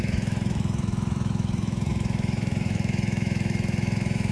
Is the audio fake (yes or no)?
yes